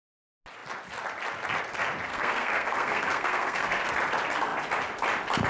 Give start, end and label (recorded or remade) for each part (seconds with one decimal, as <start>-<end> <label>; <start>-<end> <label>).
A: 0.0-2.1 recorded; 2.1-3.9 remade; 3.9-5.5 recorded